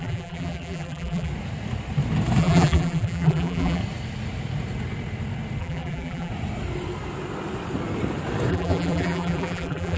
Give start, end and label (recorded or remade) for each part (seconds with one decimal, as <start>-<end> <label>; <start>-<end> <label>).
0.0-1.3 remade; 1.3-2.4 recorded; 2.4-3.8 remade; 3.8-5.6 recorded; 5.6-6.3 remade; 6.3-8.5 recorded; 8.5-10.0 remade